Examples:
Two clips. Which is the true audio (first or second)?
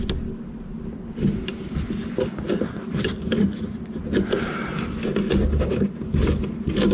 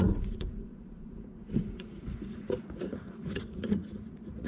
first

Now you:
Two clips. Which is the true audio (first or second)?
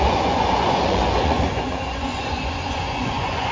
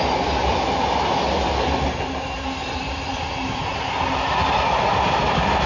second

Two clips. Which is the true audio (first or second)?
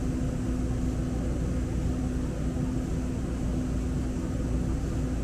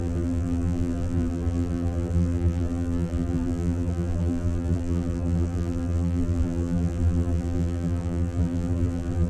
first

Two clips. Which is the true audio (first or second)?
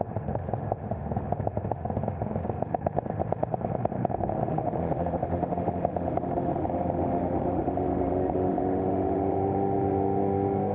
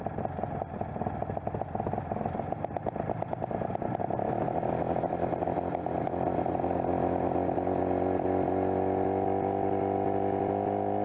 second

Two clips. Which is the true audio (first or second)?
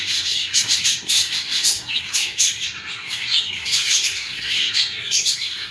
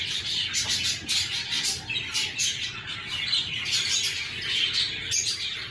second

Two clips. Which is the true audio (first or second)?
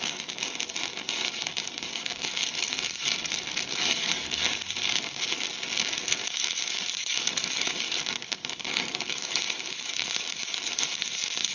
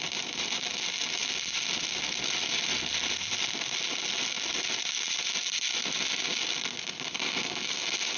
second